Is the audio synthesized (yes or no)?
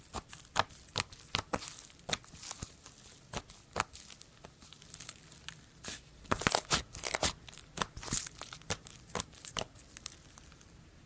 no